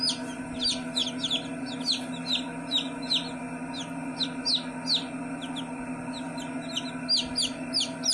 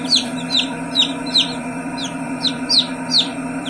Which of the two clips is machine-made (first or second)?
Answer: second